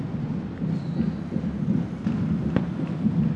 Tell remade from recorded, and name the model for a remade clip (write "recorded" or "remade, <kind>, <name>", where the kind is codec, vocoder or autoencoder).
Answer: recorded